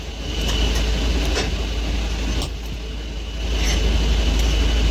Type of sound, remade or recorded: recorded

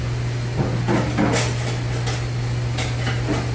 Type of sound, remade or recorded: recorded